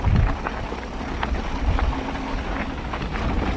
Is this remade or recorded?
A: recorded